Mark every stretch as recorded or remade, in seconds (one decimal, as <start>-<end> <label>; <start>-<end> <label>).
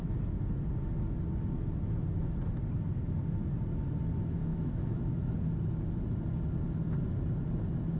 0.0-4.5 recorded; 4.5-5.0 remade; 5.0-8.0 recorded